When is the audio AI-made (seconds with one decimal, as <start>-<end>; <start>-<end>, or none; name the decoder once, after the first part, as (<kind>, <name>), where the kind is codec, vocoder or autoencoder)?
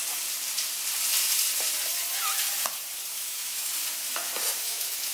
3.1-3.7 (autoencoder, DAC-VAE); 4.6-5.1